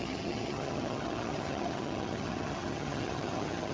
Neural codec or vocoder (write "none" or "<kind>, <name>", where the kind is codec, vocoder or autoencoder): vocoder, HiFi-GAN